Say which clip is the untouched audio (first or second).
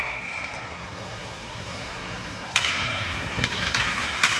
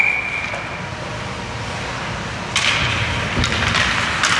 second